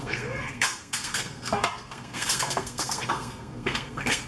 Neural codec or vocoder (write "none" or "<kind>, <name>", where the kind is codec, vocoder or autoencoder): codec, SNAC